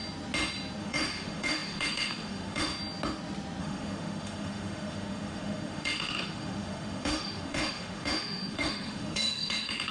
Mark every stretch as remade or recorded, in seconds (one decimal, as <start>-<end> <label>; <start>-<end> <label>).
0.0-0.8 recorded; 0.8-2.7 remade; 2.7-3.6 recorded; 3.6-9.9 remade

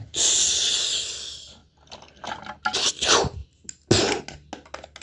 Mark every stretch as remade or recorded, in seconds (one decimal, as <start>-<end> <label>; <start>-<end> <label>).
0.0-5.0 recorded

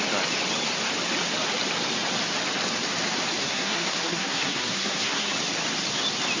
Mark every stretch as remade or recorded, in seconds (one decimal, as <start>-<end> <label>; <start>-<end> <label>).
0.0-3.4 recorded; 3.4-5.3 remade; 5.3-6.4 recorded

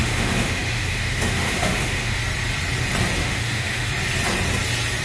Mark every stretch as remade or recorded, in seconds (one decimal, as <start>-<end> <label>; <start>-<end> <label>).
0.0-2.2 remade; 2.2-3.2 recorded; 3.2-3.9 remade; 3.9-5.0 recorded